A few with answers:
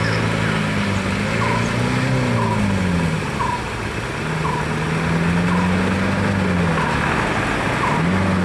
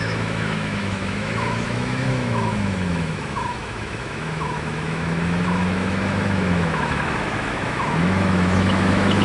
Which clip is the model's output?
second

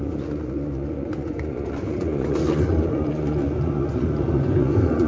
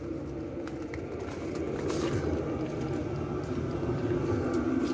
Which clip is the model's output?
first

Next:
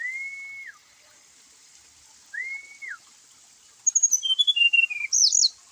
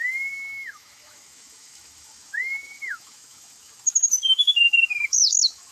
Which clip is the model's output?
second